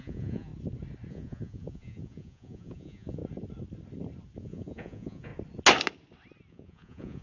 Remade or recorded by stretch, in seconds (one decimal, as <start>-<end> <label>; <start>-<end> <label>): 0.0-0.5 remade; 0.5-1.1 recorded; 1.1-3.2 remade; 3.2-4.4 recorded; 4.4-5.3 remade; 5.3-6.5 recorded; 6.5-7.2 remade

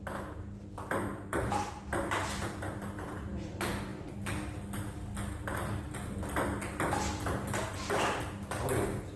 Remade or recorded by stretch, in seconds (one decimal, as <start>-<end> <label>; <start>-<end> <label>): 0.0-9.2 recorded

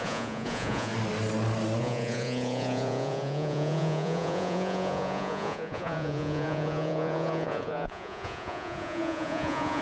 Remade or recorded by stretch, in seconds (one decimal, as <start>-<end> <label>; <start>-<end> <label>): 0.0-0.9 remade; 0.9-1.8 recorded; 1.8-9.8 remade